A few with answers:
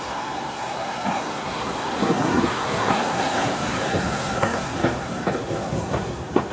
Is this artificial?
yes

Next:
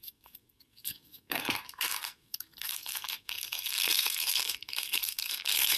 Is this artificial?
yes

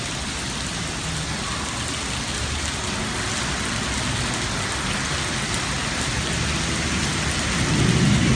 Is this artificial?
no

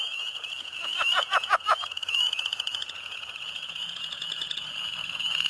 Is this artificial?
yes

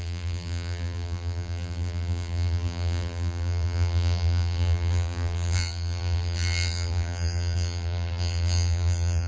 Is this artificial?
yes